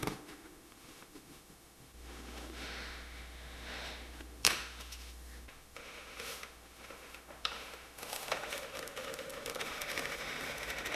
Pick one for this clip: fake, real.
fake